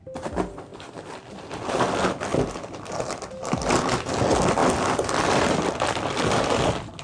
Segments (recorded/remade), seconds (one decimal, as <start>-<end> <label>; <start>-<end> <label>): 0.0-7.0 recorded

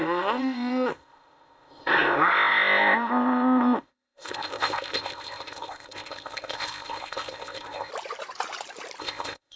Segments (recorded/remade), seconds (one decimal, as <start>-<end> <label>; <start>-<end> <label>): 0.0-7.9 remade; 7.9-9.0 recorded; 9.0-9.6 remade

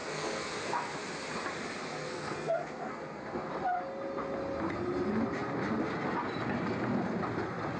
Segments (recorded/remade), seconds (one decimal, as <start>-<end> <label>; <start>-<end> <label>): 0.0-0.9 remade; 0.9-2.0 recorded; 2.0-3.5 remade; 3.5-7.8 recorded

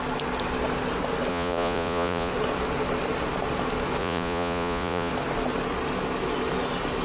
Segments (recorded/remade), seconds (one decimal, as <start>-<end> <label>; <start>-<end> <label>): 0.0-1.3 recorded; 1.3-2.3 remade; 2.3-4.0 recorded; 4.0-5.1 remade; 5.1-7.0 recorded

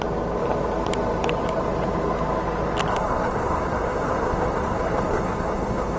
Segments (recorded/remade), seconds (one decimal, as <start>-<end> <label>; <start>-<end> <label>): 0.0-2.9 recorded; 2.9-6.0 remade

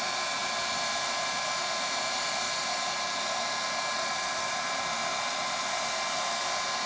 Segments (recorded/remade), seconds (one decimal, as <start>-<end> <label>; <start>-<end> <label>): 0.0-6.9 recorded